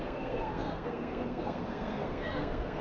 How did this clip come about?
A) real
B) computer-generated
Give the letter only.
B